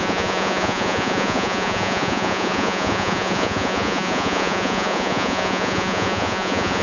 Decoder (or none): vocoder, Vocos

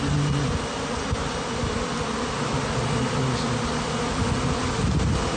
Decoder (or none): none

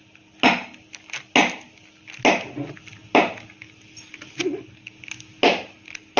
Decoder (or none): none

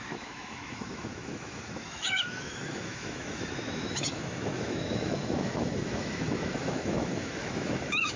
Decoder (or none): autoencoder, DAC-VAE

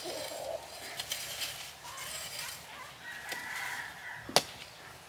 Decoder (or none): none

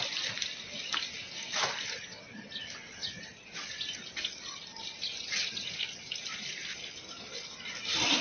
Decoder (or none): none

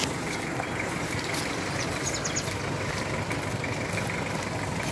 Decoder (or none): none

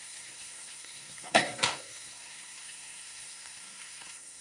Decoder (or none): codec, SNAC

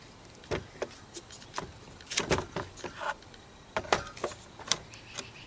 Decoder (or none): none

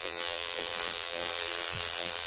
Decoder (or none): vocoder, BigVGAN v2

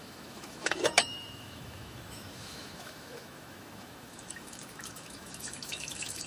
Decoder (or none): autoencoder, DAC-VAE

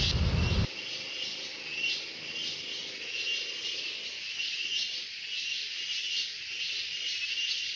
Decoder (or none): none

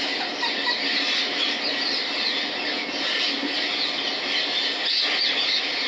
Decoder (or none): none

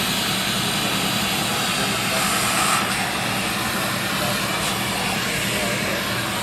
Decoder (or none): none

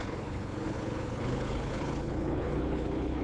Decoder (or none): codec, HILCodec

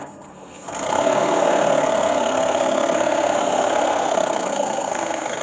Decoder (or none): codec, SNAC